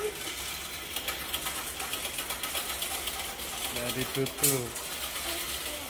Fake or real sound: real